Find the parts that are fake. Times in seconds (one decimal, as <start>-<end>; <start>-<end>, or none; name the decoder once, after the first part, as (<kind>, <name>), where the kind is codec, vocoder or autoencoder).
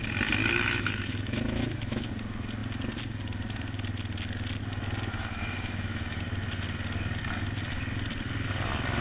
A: 0.4-2.1 (autoencoder, DAC-VAE); 5.1-6.2